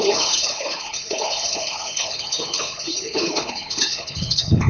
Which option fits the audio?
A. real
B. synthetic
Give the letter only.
B